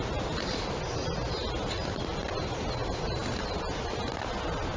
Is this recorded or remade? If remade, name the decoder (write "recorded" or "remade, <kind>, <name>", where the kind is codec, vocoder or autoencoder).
recorded